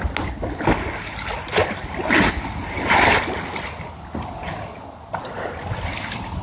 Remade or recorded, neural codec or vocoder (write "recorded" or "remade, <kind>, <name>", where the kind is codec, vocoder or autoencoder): recorded